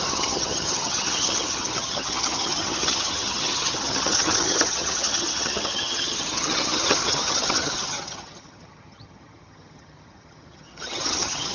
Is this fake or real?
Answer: fake